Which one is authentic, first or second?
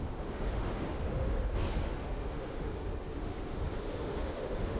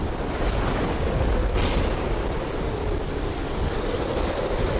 second